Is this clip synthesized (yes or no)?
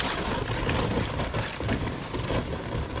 no